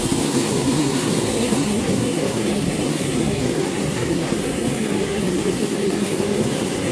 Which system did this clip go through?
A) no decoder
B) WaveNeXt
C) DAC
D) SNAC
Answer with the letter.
D